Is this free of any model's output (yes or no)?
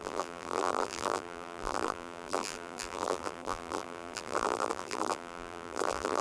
no